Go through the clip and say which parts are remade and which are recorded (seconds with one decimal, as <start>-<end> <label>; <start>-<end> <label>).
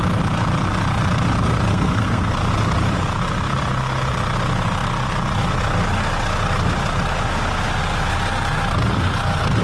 0.0-1.7 recorded; 1.7-2.3 remade; 2.3-9.6 recorded